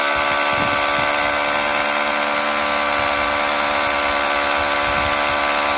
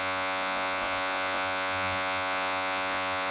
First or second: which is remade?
second